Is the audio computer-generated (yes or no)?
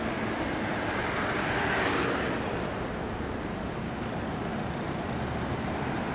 no